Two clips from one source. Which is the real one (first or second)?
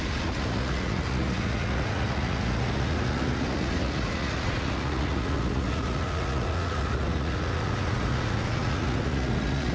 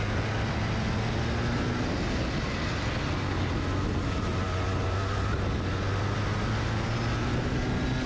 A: second